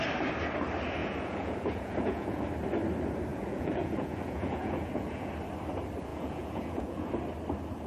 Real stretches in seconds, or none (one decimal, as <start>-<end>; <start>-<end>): 0.0-1.0; 2.4-3.3; 5.3-6.1; 7.1-7.9